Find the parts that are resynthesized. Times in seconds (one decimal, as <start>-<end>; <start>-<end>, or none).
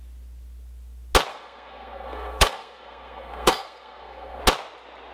1.3-4.4